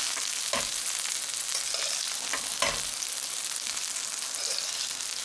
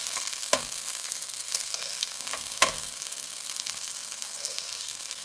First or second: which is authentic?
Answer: first